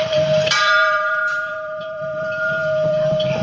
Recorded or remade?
remade